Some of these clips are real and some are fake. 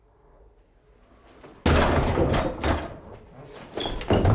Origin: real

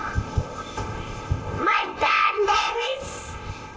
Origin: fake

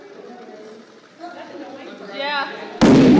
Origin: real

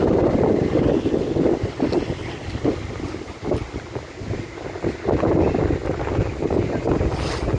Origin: real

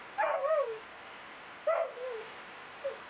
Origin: real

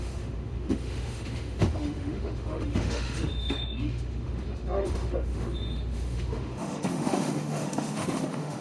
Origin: fake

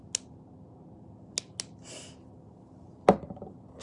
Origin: real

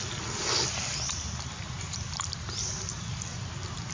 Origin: real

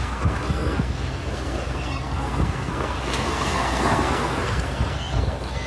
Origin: fake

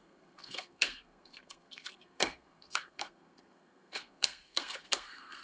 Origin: fake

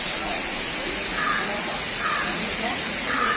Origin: fake